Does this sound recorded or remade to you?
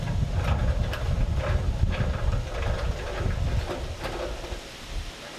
recorded